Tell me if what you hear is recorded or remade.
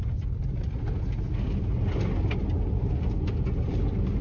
recorded